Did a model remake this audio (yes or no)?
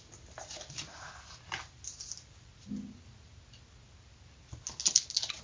no